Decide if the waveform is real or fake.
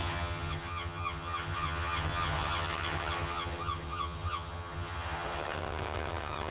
fake